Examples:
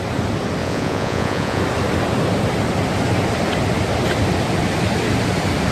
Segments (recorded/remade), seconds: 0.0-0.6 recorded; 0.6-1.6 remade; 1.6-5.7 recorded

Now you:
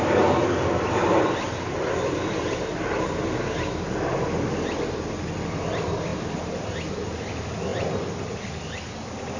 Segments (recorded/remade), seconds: 0.0-9.4 recorded

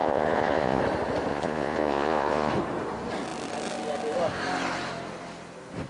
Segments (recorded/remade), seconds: 0.0-0.8 remade; 0.8-1.3 recorded; 1.3-2.5 remade; 2.5-5.9 recorded

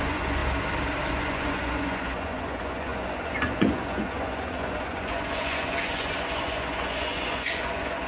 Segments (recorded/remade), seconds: 0.0-0.4 remade; 0.4-1.1 recorded; 1.1-8.1 remade

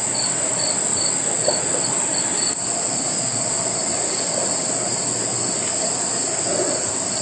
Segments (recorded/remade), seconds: 0.0-7.2 recorded

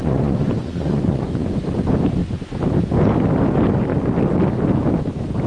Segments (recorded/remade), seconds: 0.0-1.6 remade; 1.6-5.5 recorded